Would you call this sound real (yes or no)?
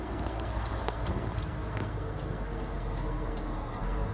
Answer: no